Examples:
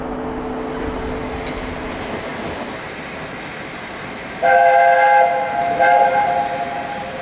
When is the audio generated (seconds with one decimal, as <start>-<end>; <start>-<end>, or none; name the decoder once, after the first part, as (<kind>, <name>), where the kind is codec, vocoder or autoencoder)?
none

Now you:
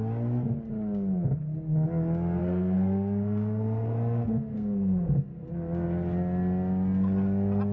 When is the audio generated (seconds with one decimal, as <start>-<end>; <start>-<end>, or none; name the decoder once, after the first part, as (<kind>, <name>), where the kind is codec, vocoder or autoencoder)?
2.4-5.5 (codec, SNAC)

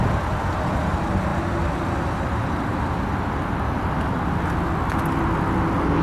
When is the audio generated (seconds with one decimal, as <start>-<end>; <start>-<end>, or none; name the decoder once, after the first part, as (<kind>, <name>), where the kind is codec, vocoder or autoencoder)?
none

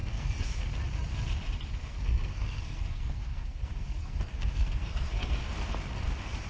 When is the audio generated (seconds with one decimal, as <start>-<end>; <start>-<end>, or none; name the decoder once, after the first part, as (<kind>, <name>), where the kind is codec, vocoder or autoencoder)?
0.0-0.6 (codec, SNAC); 1.8-5.5

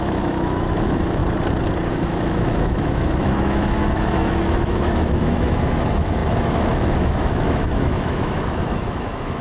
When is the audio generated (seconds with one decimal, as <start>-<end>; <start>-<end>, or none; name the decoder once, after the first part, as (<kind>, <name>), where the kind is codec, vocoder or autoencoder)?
0.0-1.2 (autoencoder, DAC-VAE); 1.9-9.4